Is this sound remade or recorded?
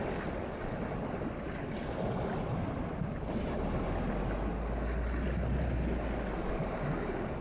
recorded